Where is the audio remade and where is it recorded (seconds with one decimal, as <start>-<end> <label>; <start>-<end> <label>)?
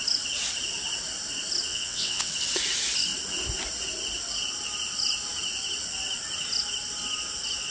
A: 0.0-1.7 recorded; 1.7-2.3 remade; 2.3-7.7 recorded